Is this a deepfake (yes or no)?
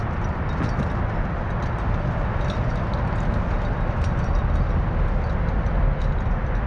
no